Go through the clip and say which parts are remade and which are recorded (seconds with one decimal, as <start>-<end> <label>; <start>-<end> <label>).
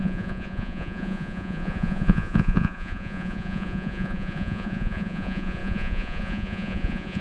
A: 0.0-7.2 remade